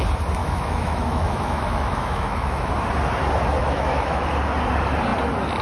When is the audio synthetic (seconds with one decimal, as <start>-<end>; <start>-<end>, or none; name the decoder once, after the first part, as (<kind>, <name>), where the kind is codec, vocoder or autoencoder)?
0.4-2.7 (autoencoder, DAC-VAE); 3.6-4.3

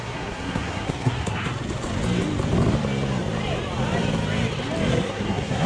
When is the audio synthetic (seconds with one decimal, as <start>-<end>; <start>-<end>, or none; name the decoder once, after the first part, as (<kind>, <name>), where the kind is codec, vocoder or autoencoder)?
0.0-1.5 (codec, SNAC); 4.9-5.7

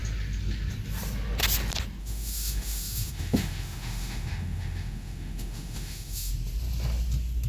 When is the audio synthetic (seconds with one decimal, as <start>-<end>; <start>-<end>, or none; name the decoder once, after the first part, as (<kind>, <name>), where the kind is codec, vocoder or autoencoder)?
2.0-6.3 (autoencoder, DAC-VAE)

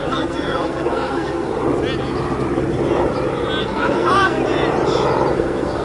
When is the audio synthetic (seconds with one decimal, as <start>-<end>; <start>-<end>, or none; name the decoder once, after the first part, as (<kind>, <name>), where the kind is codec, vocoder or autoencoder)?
0.0-1.5 (codec, SNAC); 3.6-4.4; 5.3-5.8

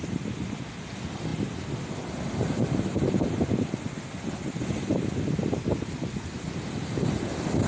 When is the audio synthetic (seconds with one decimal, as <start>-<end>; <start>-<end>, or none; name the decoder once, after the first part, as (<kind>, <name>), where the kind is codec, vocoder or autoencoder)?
none

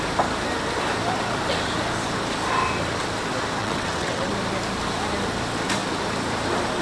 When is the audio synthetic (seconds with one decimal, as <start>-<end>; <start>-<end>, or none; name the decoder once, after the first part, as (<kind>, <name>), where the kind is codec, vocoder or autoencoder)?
3.6-4.3 (vocoder, WaveNeXt)

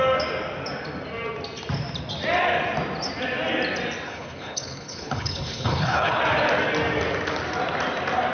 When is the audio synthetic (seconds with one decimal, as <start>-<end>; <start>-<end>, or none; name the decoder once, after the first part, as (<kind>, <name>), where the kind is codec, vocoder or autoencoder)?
4.1-6.2 (codec, HILCodec)

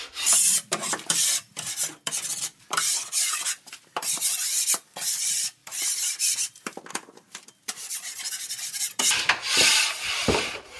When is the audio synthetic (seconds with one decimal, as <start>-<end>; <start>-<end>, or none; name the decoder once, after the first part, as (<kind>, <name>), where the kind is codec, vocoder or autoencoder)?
0.0-10.8 (vocoder, BigVGAN v2)